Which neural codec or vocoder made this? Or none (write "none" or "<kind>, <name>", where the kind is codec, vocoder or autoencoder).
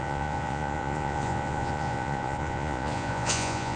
vocoder, Vocos